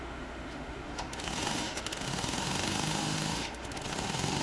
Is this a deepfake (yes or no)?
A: yes